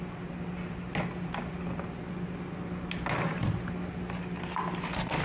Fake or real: real